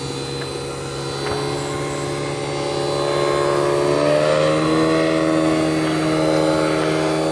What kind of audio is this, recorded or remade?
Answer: recorded